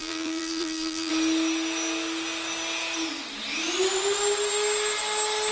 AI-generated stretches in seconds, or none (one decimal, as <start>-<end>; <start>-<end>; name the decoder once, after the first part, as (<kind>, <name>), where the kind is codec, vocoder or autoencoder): 0.0-1.1 (vocoder, BigVGAN v2)

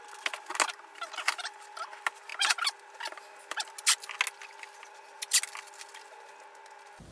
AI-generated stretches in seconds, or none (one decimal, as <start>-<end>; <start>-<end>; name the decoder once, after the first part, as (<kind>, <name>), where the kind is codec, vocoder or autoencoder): none

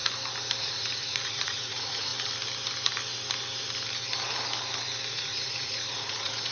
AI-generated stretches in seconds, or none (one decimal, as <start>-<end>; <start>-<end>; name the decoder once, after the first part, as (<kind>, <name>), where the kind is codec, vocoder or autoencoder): 0.6-2.1 (vocoder, Vocos); 5.1-6.5

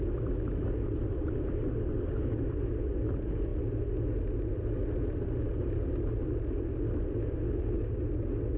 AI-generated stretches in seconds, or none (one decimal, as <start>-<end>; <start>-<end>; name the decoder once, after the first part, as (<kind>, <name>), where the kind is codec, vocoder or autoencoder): none

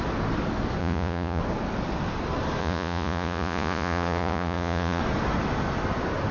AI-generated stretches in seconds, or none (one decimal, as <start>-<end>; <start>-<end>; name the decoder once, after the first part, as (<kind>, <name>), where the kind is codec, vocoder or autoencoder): 0.8-1.4 (vocoder, Vocos); 2.6-5.0